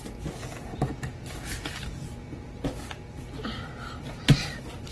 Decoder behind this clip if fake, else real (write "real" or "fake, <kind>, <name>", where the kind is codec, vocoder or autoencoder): real